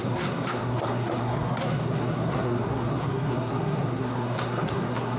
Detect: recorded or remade remade